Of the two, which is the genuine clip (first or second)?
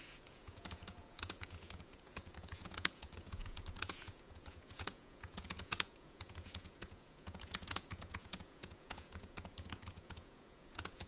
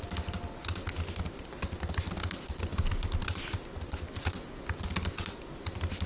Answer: second